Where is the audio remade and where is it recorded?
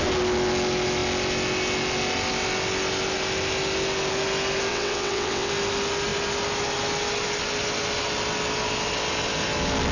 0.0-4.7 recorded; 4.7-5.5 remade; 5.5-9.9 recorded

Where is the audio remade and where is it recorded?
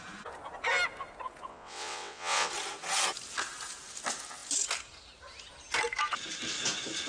0.0-1.5 recorded; 1.5-2.5 remade; 2.5-7.1 recorded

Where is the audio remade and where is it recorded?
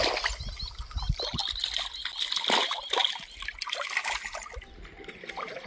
0.0-5.7 recorded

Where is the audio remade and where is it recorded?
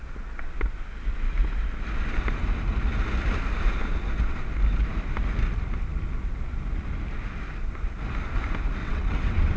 0.0-8.8 recorded; 8.8-9.6 remade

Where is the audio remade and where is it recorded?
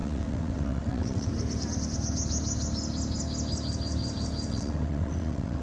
0.0-1.3 remade; 1.3-4.5 recorded; 4.5-5.6 remade